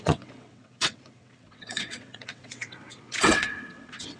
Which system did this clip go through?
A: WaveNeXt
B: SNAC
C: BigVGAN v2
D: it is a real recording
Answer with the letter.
A